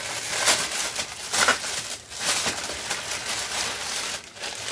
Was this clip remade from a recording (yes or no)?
no